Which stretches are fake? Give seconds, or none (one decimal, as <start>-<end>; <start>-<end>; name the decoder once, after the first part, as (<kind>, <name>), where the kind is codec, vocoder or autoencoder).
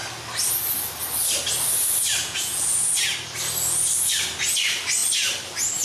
2.2-2.9 (vocoder, Vocos)